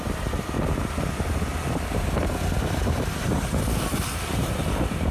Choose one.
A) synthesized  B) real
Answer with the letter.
B